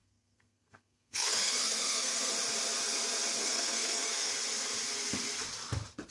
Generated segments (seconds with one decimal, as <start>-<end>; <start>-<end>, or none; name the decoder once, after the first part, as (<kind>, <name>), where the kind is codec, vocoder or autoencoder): 0.0-2.3 (codec, SNAC); 3.4-4.3